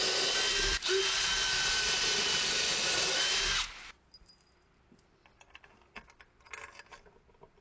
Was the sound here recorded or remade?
recorded